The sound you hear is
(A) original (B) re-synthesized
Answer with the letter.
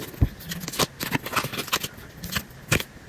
A